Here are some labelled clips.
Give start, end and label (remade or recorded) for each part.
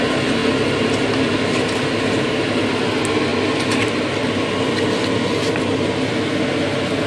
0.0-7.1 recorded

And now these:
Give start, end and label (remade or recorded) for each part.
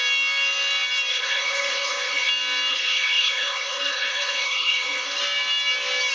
0.0-1.1 recorded; 1.1-2.3 remade; 2.3-2.7 recorded; 2.7-5.2 remade; 5.2-6.1 recorded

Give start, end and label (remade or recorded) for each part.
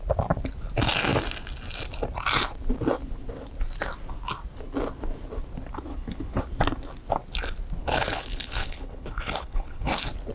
0.0-5.9 recorded; 5.9-6.4 remade; 6.4-7.8 recorded; 7.8-9.9 remade; 9.9-10.3 recorded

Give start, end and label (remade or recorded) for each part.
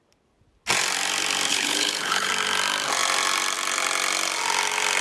0.0-1.5 recorded; 1.5-2.3 remade; 2.3-5.0 recorded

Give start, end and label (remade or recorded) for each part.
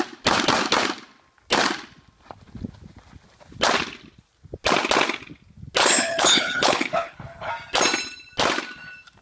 0.0-5.8 recorded; 5.8-7.5 remade; 7.5-9.2 recorded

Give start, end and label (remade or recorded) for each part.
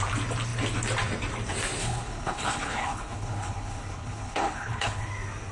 0.0-1.8 recorded; 1.8-5.1 remade; 5.1-5.5 recorded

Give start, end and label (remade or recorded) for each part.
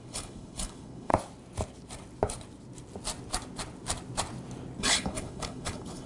0.0-1.1 remade; 1.1-4.8 recorded; 4.8-6.1 remade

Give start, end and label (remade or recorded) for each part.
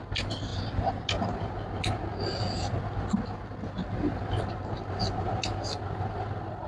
0.0-6.7 recorded